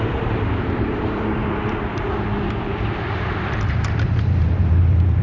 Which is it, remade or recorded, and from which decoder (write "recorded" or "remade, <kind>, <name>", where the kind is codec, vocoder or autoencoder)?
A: remade, vocoder, BigVGAN v2